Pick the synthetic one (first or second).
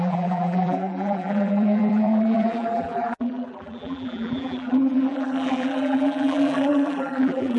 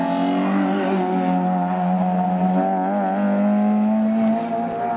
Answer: first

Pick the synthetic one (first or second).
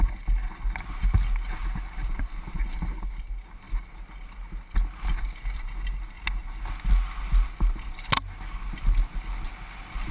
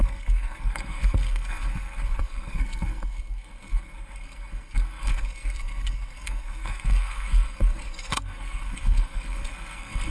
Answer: second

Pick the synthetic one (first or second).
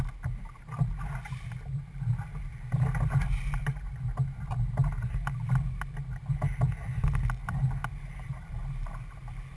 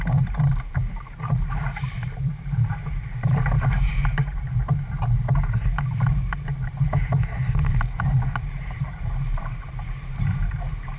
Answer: second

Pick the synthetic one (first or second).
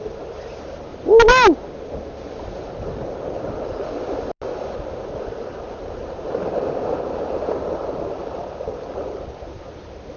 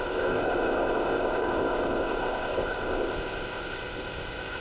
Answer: second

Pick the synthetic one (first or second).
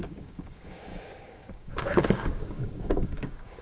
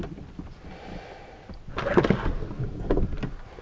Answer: first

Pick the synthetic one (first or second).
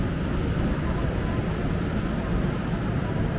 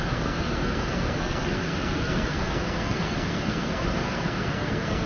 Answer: second